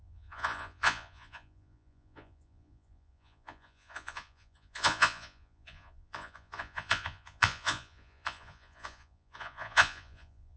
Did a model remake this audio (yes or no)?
yes